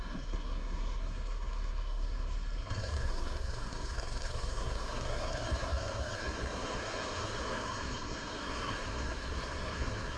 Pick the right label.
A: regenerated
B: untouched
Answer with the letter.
A